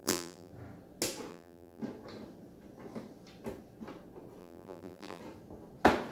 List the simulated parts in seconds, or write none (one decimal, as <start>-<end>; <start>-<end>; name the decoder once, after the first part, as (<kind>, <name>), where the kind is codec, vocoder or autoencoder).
0.0-0.5 (vocoder, BigVGAN v2); 1.3-1.8; 4.4-5.2